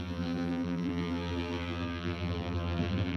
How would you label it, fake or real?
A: fake